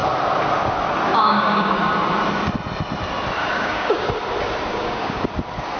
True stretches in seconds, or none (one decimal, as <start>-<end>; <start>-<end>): 0.0-1.1; 1.9-3.4; 4.1-4.7; 5.3-5.8